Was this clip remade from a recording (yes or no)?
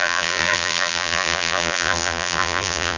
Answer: yes